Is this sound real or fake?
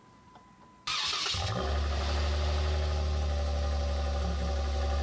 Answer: real